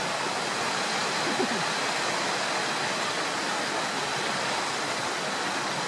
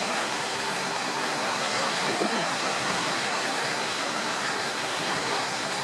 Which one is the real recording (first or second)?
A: first